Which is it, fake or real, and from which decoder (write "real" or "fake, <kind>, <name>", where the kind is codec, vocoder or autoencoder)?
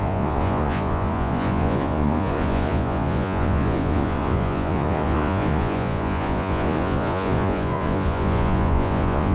fake, vocoder, Vocos